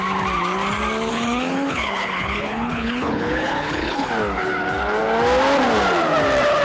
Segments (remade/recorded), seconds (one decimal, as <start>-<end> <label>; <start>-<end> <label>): 0.0-1.1 recorded; 1.1-4.1 remade; 4.1-6.6 recorded